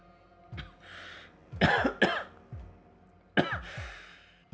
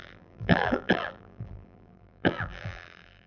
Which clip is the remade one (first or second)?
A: second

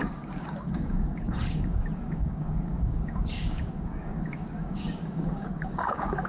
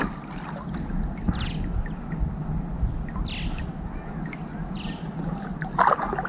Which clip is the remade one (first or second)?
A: first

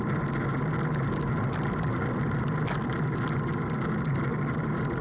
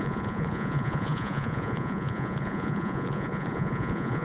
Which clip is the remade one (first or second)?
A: second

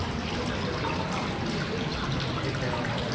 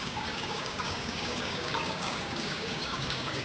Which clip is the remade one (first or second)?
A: second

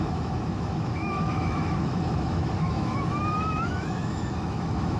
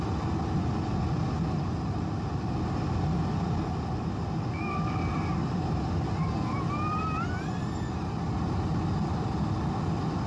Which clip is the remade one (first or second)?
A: first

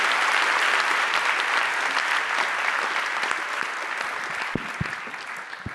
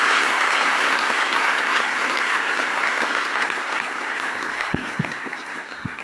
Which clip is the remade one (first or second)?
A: second